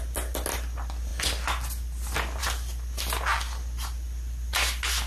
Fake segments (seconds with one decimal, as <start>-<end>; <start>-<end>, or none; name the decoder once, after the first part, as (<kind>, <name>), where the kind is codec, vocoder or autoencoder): none